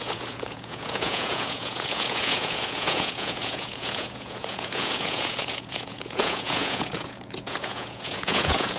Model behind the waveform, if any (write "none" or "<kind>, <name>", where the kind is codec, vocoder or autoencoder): vocoder, Vocos